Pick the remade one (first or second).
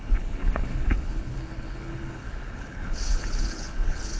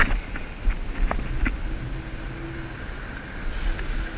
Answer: first